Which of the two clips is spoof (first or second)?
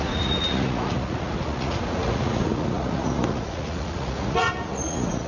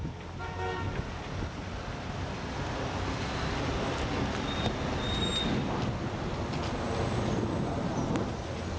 first